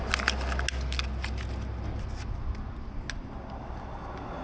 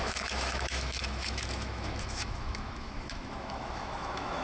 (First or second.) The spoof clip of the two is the second